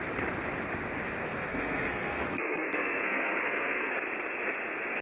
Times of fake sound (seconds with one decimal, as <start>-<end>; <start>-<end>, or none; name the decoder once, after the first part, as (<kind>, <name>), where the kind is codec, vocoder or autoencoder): 1.2-3.9 (codec, SNAC)

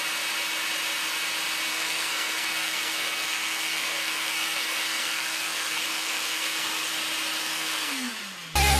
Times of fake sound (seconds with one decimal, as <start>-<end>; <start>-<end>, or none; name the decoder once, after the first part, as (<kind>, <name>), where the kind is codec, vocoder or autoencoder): 1.7-6.9 (codec, SNAC); 7.4-8.1

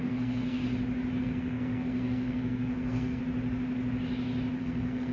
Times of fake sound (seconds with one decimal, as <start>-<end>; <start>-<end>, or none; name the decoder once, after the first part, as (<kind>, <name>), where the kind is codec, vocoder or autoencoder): 0.0-0.6 (codec, SNAC); 1.2-3.2; 4.6-5.1

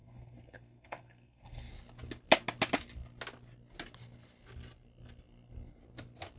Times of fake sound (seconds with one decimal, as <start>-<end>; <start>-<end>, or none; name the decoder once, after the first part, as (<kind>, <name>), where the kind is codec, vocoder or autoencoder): 0.0-1.7 (codec, SNAC)

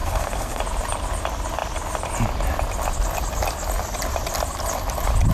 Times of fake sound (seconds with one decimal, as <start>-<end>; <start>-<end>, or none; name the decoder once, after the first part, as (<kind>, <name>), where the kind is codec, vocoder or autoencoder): 0.0-0.6 (codec, SNAC)

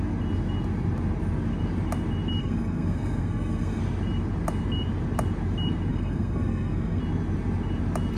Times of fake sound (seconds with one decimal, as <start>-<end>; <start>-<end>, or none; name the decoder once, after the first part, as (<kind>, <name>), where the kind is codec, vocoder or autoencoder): 2.4-3.8 (codec, SNAC); 5.9-7.0